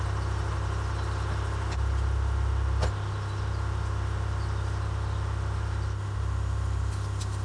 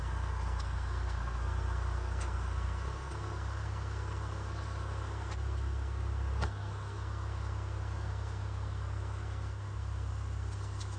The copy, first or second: second